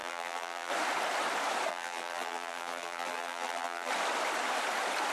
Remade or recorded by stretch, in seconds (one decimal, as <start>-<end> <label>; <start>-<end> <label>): 0.0-0.7 remade; 0.7-1.7 recorded; 1.7-3.9 remade; 3.9-5.1 recorded